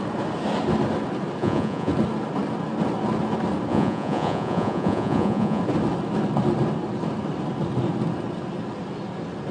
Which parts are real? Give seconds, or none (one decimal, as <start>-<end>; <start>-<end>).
0.0-1.4; 1.9-3.7; 5.6-9.5